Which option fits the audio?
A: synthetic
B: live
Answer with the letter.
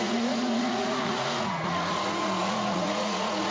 A